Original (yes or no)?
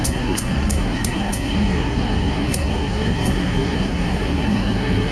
no